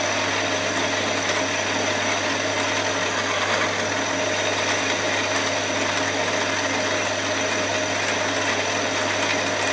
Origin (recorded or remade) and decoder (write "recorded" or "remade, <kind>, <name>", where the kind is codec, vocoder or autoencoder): recorded